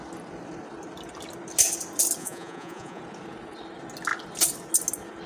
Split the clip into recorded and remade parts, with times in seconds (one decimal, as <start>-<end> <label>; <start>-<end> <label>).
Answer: 0.0-2.2 recorded; 2.2-3.0 remade; 3.0-5.3 recorded